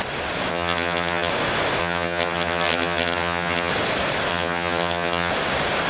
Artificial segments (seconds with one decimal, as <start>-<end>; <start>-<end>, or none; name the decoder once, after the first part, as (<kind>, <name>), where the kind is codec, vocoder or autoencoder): 0.5-1.3 (vocoder, HiFi-GAN); 1.8-3.7; 4.3-5.3